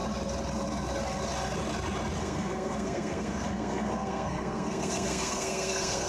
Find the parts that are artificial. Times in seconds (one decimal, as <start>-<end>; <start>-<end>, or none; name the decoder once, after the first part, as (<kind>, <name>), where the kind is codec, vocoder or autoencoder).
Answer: 2.2-6.1 (codec, SNAC)

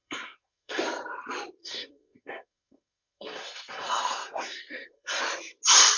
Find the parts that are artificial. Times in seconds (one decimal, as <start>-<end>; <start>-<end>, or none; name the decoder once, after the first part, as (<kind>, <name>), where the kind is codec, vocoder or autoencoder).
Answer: 0.0-0.8 (codec, SNAC); 1.6-5.2

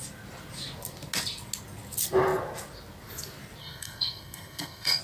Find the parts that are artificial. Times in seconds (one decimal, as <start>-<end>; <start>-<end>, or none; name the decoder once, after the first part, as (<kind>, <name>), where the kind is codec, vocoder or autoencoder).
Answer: 3.6-5.0 (codec, SNAC)

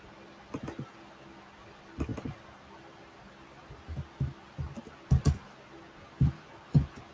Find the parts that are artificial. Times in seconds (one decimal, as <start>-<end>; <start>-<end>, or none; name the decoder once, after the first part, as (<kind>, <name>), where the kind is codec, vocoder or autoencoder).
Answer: none

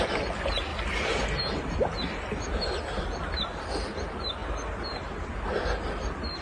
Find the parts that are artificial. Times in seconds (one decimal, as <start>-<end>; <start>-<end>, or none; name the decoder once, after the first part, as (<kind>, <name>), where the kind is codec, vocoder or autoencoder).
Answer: none

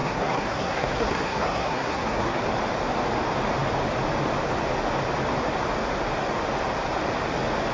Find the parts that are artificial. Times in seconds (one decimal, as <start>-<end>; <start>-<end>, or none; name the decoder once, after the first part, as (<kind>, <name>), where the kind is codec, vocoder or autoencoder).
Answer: 0.0-2.4 (codec, SNAC)